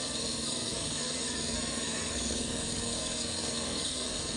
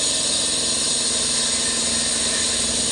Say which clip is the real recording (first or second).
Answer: second